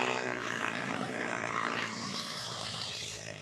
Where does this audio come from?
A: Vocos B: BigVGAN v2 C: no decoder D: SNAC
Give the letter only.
D